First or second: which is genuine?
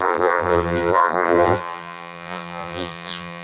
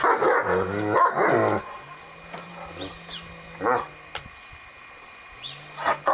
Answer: second